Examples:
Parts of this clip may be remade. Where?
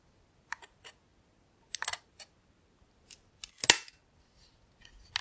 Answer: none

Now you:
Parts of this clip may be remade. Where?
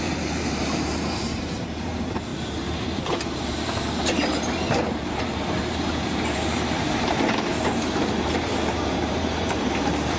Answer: 0.0-10.2 (vocoder, BigVGAN v2)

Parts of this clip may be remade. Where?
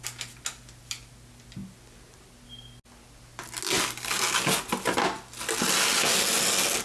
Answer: none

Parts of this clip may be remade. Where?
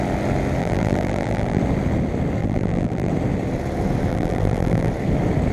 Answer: 0.6-1.6 (vocoder, BigVGAN v2); 2.4-3.1; 4.1-4.9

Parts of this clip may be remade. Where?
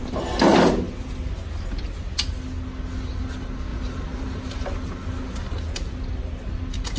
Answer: 3.7-4.4 (vocoder, BigVGAN v2)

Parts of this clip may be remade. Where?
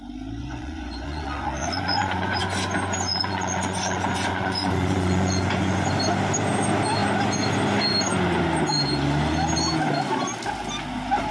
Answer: 0.4-2.4 (vocoder, Vocos); 3.1-5.9